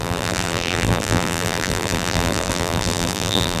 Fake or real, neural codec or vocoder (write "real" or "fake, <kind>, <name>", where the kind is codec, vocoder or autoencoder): fake, vocoder, BigVGAN v2